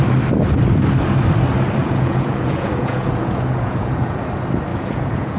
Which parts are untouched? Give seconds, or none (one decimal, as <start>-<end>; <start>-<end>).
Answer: 0.0-1.8; 4.2-4.7